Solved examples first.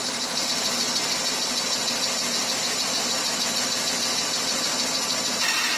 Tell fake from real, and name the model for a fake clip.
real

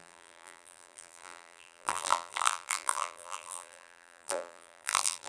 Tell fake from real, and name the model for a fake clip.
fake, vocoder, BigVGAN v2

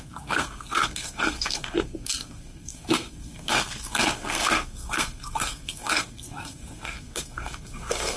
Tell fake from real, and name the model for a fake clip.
fake, codec, SNAC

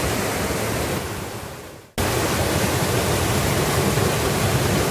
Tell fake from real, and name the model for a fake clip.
real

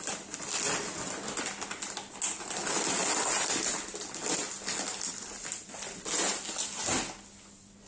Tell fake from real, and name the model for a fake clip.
real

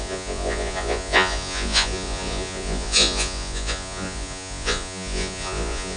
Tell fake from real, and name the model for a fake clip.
fake, vocoder, Vocos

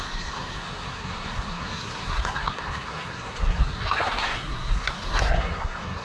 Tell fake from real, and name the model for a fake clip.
fake, codec, SNAC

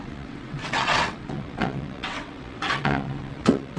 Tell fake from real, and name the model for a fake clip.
fake, vocoder, WaveNeXt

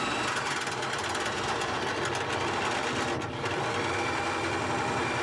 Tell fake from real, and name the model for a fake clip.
real